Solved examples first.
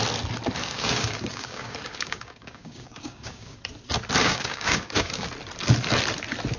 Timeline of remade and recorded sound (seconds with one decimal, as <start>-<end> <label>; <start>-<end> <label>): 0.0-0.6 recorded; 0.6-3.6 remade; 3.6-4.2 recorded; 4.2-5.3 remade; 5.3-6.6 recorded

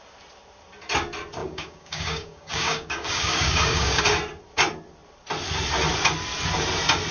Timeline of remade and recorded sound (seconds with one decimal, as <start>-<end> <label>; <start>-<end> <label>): 0.0-1.4 recorded; 1.4-4.0 remade; 4.0-7.1 recorded

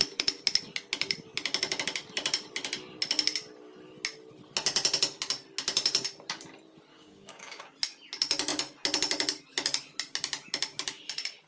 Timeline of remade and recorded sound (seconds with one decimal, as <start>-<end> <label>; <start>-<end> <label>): 0.0-6.9 recorded; 6.9-7.6 remade; 7.6-11.5 recorded

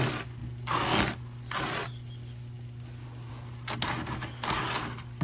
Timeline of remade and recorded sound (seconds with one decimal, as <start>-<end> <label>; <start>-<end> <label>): 0.0-5.2 recorded

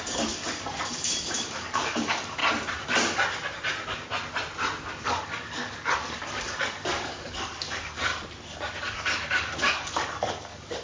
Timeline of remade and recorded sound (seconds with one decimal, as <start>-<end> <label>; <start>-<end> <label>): 0.0-2.4 remade; 2.4-5.0 recorded; 5.0-8.1 remade; 8.1-8.8 recorded; 8.8-10.8 remade

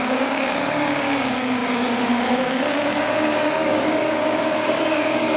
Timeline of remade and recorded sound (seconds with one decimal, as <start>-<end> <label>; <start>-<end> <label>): 0.0-5.4 remade

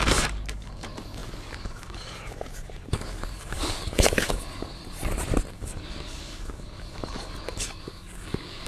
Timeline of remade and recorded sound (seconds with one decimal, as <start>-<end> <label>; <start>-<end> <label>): 0.0-4.8 remade; 4.8-5.5 recorded; 5.5-8.7 remade

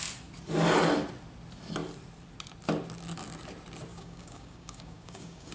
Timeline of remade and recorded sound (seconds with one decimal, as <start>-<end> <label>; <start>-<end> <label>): 0.0-3.9 recorded; 3.9-5.5 remade